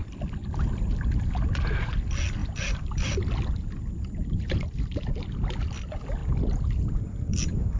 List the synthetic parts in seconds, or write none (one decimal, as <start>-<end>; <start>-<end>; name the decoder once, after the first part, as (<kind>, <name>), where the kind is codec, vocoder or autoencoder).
0.0-1.2 (vocoder, BigVGAN v2); 2.4-4.6; 6.2-7.3